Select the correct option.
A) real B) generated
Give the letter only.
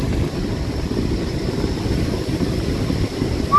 B